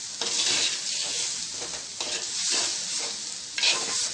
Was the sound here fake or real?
real